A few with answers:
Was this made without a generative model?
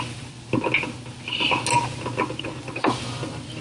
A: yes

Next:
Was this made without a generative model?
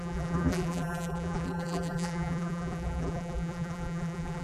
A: no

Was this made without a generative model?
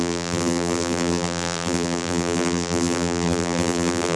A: no